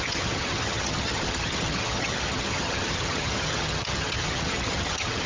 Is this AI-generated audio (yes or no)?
yes